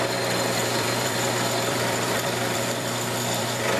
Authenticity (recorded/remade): remade